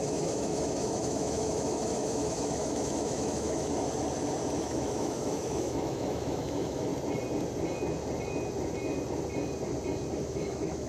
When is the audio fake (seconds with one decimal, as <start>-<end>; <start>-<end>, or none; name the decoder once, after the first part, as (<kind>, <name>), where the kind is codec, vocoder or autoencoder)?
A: 0.0-3.7 (autoencoder, DAC-VAE); 4.6-6.9; 10.2-10.9